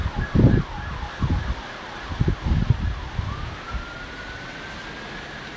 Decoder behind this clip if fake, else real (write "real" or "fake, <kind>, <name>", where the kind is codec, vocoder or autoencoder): real